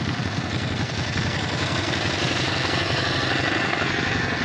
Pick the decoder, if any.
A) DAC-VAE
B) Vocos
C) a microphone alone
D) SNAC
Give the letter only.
D